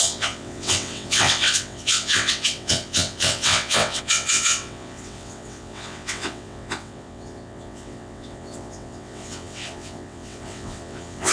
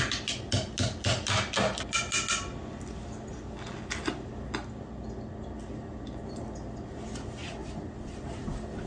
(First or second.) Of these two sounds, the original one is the second